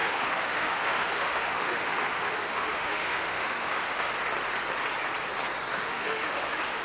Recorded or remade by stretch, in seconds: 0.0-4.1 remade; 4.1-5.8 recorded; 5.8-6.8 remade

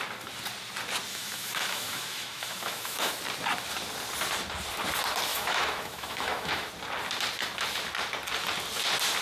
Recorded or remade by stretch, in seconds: 0.0-1.1 recorded; 1.1-3.1 remade; 3.1-5.3 recorded; 5.3-6.7 remade; 6.7-9.2 recorded

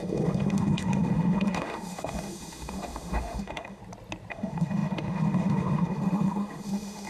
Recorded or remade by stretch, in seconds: 0.0-3.8 remade; 3.8-4.3 recorded; 4.3-7.1 remade

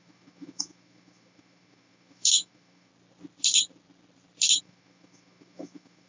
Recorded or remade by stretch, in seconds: 0.0-2.9 remade; 2.9-4.6 recorded; 4.6-6.1 remade

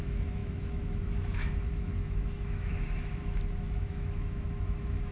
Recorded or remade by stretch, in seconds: 0.0-5.1 remade

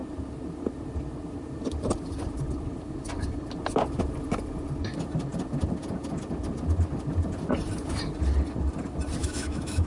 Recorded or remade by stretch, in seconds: 0.0-9.2 recorded; 9.2-9.9 remade